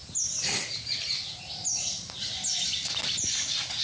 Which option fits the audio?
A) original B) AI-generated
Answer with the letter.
A